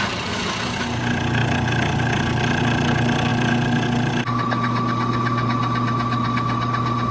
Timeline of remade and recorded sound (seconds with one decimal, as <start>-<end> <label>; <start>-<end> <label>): 0.0-7.1 recorded